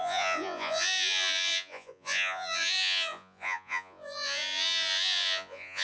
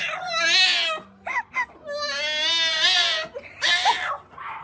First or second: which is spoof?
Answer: first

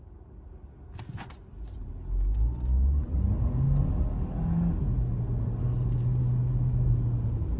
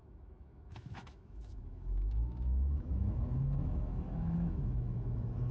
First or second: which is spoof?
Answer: second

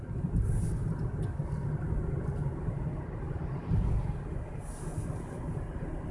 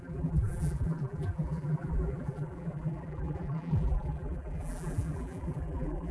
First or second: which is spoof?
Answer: second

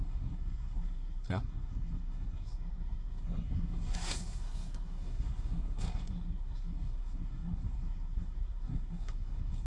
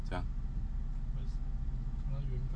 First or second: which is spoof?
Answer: first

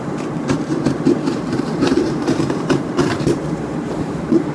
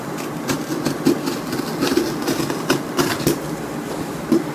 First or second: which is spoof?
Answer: first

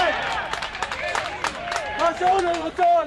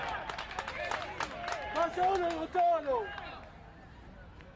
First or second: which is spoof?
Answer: first